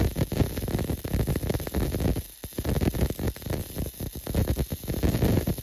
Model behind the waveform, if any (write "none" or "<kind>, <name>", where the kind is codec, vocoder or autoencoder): none